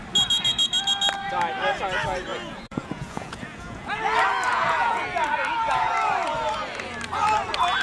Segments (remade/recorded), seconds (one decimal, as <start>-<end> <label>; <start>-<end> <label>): 0.0-2.3 recorded; 2.3-3.9 remade; 3.9-4.5 recorded; 4.5-5.0 remade; 5.0-7.8 recorded